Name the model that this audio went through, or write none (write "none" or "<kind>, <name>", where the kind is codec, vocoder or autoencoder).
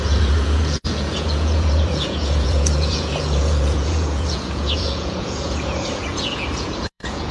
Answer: vocoder, Vocos